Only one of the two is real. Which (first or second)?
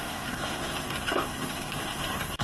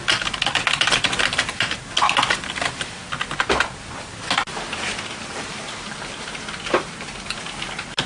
second